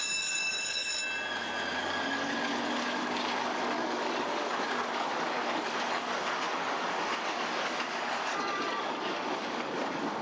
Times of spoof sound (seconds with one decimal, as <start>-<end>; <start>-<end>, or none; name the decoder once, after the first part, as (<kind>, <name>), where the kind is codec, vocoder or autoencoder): 0.0-0.9 (codec, DAC); 1.8-10.2